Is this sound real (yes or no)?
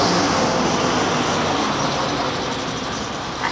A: yes